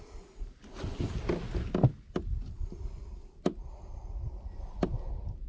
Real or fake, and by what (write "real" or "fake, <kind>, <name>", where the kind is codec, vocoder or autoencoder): real